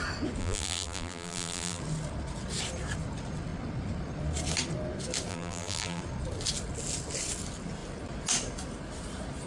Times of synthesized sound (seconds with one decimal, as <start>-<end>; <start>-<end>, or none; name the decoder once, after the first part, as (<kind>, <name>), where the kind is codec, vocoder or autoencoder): 0.4-1.8 (vocoder, BigVGAN v2); 5.3-6.0